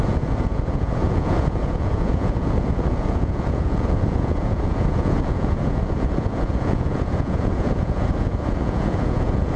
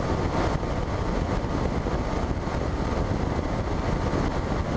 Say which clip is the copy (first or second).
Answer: first